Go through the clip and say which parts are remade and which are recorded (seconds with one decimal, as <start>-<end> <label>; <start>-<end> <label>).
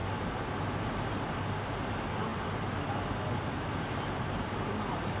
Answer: 0.0-5.2 recorded